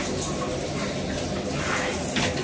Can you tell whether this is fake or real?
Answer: real